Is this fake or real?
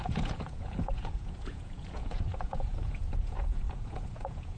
fake